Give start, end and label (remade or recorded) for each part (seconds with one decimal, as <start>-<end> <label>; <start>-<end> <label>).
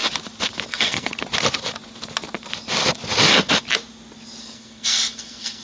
0.0-0.7 recorded; 0.7-1.1 remade; 1.1-4.4 recorded; 4.4-5.6 remade